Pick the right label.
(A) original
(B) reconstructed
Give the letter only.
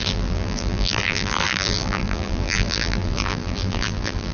B